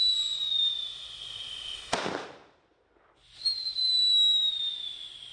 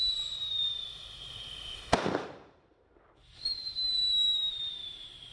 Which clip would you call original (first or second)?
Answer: first